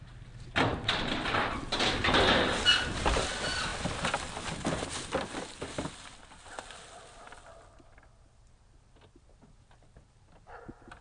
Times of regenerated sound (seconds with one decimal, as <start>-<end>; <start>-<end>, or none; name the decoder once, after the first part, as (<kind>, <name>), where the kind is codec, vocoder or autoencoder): none